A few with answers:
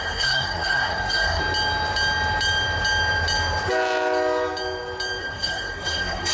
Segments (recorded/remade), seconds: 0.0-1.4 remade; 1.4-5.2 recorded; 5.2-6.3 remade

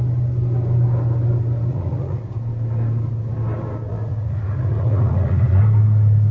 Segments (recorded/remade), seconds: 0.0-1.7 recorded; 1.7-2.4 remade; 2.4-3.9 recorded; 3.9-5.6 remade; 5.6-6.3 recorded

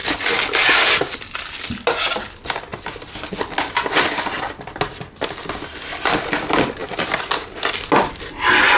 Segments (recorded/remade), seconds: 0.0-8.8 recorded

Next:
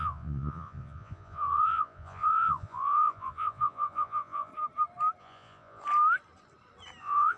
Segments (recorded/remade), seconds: 0.0-4.5 remade; 4.5-5.2 recorded; 5.2-5.8 remade; 5.8-7.0 recorded; 7.0-7.4 remade

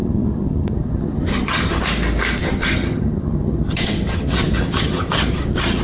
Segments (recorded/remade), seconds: 0.0-1.8 remade; 1.8-2.4 recorded; 2.4-5.8 remade